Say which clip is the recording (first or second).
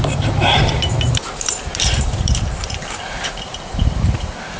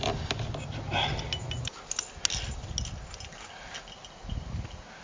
second